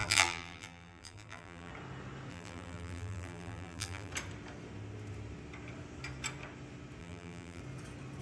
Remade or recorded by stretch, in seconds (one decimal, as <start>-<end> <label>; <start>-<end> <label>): 0.0-1.7 remade; 1.7-2.3 recorded; 2.3-4.1 remade; 4.1-7.0 recorded; 7.0-7.6 remade; 7.6-8.2 recorded